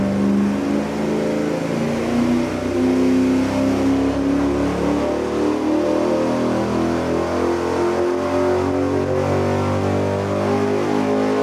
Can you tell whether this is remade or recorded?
recorded